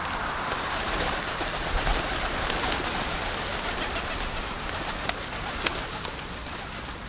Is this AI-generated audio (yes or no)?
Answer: no